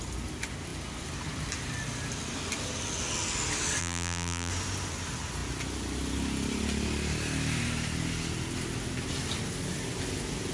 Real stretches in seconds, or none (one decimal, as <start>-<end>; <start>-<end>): 0.0-3.8; 4.5-10.5